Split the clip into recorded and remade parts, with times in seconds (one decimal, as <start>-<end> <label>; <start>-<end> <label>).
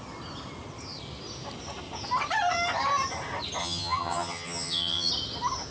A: 0.0-3.6 recorded; 3.6-5.1 remade; 5.1-5.7 recorded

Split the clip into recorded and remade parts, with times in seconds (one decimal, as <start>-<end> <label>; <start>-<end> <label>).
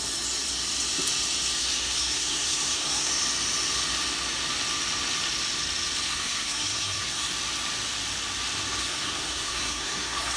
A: 0.0-1.6 recorded; 1.6-3.1 remade; 3.1-6.1 recorded; 6.1-7.3 remade; 7.3-8.8 recorded; 8.8-10.4 remade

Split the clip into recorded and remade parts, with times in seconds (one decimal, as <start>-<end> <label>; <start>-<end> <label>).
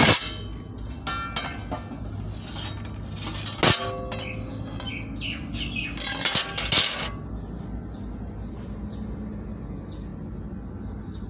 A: 0.0-11.3 recorded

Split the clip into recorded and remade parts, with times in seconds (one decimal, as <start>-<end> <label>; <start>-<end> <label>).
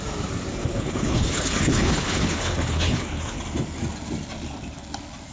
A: 0.0-0.5 recorded; 0.5-3.4 remade; 3.4-5.3 recorded